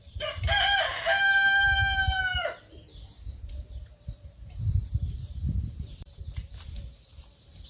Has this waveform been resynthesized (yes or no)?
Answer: yes